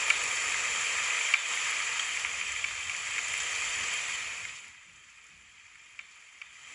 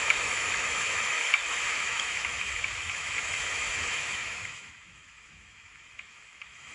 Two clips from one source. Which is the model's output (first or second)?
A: second